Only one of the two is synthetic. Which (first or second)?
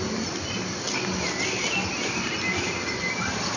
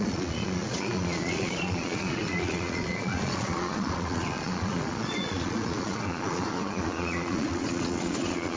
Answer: second